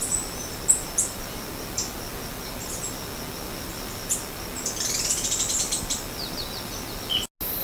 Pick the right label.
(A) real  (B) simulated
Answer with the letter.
A